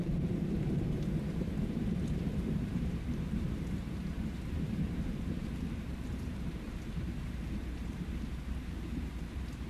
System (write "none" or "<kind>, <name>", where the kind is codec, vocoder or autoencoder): vocoder, BigVGAN v2